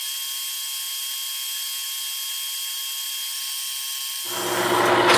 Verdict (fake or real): real